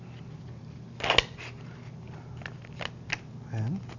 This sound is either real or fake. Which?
real